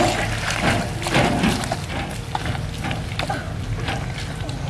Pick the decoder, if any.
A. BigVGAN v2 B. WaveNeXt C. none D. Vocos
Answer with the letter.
C